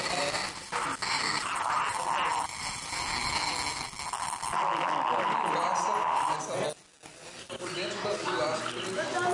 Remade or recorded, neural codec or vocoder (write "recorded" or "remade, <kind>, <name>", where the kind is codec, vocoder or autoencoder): recorded